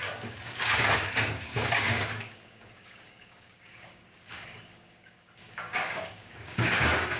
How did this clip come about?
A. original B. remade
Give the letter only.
B